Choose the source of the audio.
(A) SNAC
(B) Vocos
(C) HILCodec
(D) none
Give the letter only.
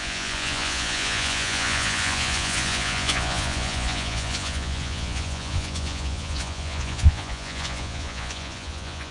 B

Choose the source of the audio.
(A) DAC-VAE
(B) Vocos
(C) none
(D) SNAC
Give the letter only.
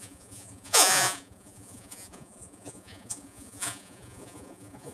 B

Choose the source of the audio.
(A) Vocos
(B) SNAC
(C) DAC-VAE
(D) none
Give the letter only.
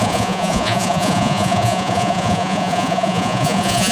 A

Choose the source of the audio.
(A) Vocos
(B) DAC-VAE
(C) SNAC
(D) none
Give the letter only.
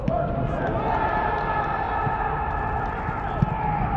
D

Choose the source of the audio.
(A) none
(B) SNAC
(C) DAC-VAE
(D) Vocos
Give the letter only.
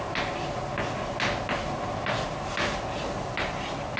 A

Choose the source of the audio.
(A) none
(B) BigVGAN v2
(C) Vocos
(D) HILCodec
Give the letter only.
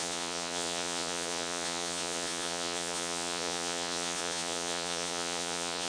C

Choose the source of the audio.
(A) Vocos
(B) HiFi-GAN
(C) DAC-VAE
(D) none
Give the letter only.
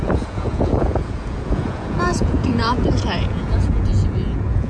A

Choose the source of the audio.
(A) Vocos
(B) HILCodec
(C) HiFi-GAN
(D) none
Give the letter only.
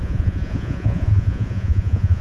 A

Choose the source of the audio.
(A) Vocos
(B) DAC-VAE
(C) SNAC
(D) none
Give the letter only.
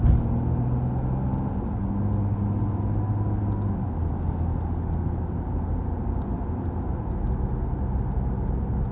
D